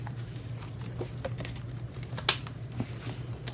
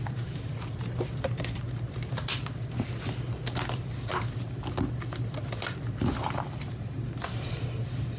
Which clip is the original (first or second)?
first